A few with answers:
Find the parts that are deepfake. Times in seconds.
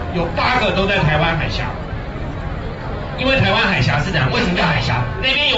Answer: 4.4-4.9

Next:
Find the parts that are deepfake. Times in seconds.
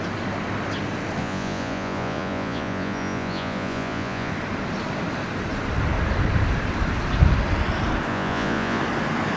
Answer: 1.2-4.3; 8.1-8.8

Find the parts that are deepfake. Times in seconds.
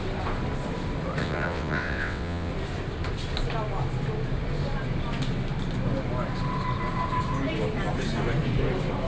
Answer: 1.2-2.5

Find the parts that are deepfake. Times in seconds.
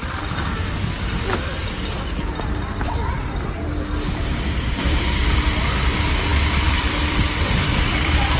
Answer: 0.0-1.6; 4.2-8.4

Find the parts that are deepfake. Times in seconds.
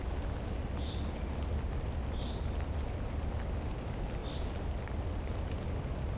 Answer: none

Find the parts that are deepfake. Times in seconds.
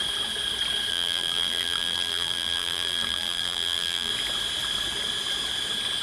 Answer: 0.9-4.1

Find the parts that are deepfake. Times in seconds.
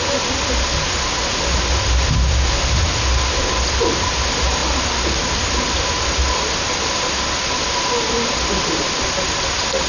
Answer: none